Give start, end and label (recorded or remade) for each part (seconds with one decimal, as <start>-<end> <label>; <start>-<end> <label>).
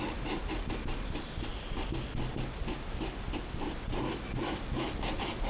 0.0-5.5 recorded